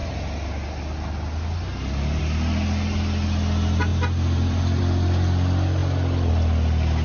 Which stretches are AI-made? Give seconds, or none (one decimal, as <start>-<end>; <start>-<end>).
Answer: 3.9-4.8